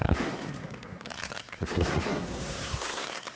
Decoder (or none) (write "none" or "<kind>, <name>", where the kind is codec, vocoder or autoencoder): codec, SNAC